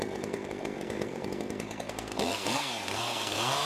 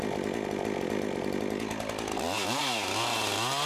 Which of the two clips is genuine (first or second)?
second